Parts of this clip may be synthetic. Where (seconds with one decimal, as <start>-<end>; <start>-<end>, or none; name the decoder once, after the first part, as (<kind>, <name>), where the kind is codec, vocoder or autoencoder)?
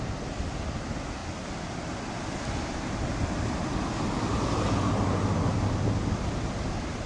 none